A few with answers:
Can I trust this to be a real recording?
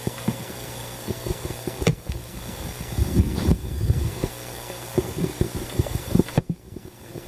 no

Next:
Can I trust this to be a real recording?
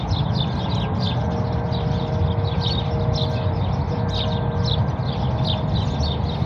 yes